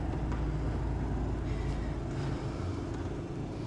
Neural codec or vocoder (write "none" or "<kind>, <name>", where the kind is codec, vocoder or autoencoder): none